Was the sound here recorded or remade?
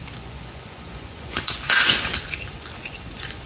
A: remade